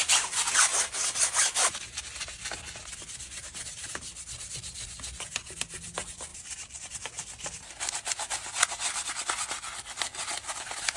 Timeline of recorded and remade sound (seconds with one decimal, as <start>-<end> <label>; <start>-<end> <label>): 0.0-0.7 recorded; 0.7-1.8 remade; 1.8-3.4 recorded; 3.4-4.2 remade; 4.2-6.3 recorded; 6.3-6.9 remade; 6.9-11.0 recorded